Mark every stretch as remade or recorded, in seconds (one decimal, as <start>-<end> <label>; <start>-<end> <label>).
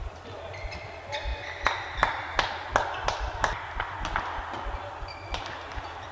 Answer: 0.0-6.1 recorded